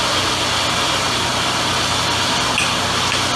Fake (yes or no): no